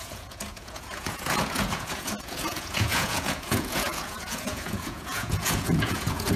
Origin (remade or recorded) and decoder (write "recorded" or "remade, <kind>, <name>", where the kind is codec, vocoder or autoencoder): remade, vocoder, Vocos